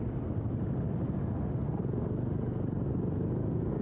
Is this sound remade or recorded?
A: recorded